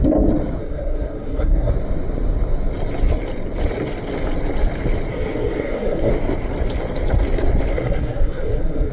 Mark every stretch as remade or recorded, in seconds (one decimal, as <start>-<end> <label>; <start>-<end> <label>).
0.0-0.6 recorded; 0.6-1.7 remade; 1.7-5.1 recorded; 5.1-6.1 remade; 6.1-7.7 recorded; 7.7-8.9 remade